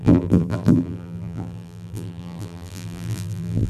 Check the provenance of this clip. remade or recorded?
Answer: remade